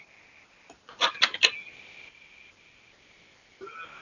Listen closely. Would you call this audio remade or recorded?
recorded